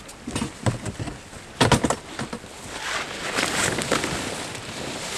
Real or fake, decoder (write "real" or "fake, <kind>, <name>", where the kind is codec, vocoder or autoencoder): real